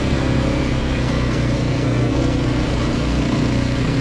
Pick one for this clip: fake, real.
fake